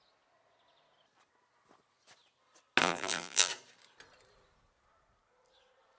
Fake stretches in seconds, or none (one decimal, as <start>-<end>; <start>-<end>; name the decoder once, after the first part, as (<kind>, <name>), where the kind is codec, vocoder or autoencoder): 2.8-3.5 (vocoder, BigVGAN v2)